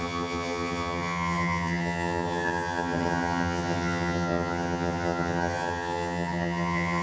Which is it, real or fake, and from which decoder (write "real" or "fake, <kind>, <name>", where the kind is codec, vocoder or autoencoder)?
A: fake, vocoder, HiFi-GAN